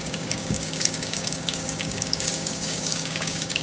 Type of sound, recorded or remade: remade